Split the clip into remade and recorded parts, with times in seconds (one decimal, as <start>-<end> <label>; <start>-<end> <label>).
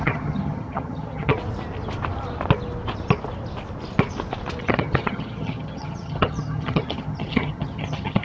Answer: 0.0-1.3 remade; 1.3-4.6 recorded; 4.6-8.2 remade